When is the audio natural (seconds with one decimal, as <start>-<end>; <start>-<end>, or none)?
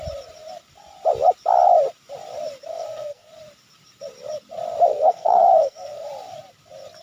0.0-2.7; 3.3-4.9; 6.1-7.0